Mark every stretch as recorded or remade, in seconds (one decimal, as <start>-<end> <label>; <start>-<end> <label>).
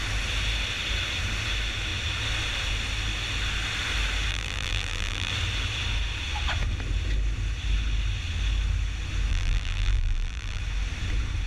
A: 0.0-4.3 recorded; 4.3-5.3 remade; 5.3-9.3 recorded; 9.3-10.6 remade; 10.6-11.5 recorded